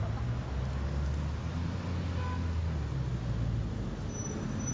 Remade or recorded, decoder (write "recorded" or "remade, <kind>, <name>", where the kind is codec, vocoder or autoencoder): recorded